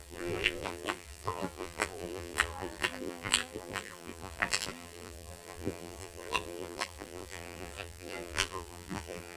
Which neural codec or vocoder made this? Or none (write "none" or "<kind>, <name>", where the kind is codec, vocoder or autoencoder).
vocoder, BigVGAN v2